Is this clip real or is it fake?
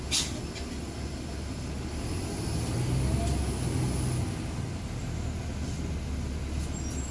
real